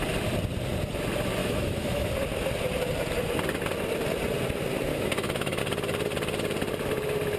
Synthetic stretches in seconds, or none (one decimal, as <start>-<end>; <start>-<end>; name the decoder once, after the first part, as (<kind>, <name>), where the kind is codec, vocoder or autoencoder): 1.4-2.1 (autoencoder, DAC-VAE); 4.9-5.6